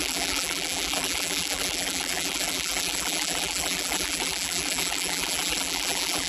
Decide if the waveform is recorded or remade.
remade